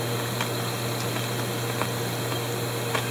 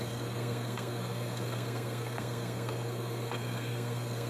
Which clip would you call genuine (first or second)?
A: first